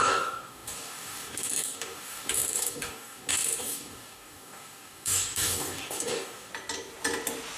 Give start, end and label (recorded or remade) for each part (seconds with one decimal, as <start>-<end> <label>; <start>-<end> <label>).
0.0-6.5 remade; 6.5-7.6 recorded